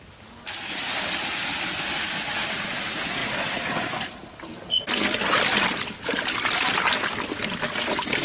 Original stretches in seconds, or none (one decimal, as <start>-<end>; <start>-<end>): 0.0-8.2